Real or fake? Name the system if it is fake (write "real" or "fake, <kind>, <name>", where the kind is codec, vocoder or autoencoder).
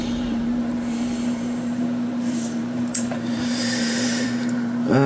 fake, vocoder, BigVGAN v2